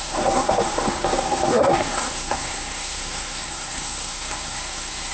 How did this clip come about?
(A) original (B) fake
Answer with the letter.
B